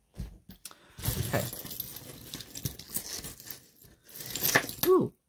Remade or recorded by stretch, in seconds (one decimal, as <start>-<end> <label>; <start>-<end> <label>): 0.0-5.3 recorded